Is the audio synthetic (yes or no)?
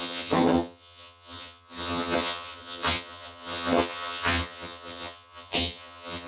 yes